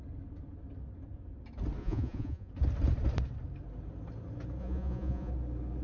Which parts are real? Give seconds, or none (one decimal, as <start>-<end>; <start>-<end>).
0.0-1.8; 2.5-4.6; 5.3-5.8